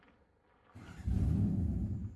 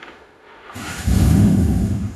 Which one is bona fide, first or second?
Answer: first